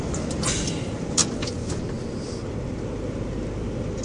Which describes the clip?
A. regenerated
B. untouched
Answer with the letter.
B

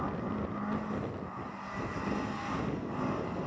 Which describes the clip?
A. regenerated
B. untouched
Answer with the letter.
B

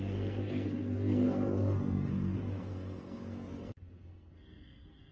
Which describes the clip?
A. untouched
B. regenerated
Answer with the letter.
B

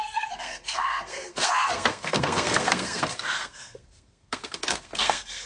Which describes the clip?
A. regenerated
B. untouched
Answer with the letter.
A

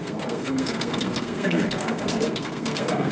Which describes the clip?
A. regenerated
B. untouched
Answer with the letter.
A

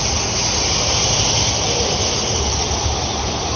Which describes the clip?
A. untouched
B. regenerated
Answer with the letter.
A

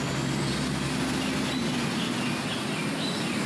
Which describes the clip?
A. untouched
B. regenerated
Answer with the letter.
A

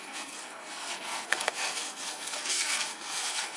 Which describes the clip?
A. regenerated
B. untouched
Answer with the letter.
A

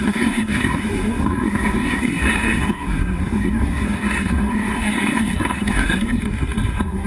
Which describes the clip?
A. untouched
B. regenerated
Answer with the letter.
B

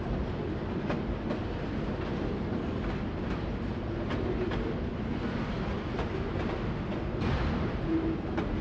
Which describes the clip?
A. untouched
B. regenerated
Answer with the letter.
A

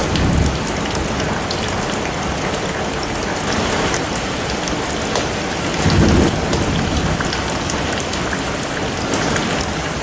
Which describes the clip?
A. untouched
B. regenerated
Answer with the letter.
A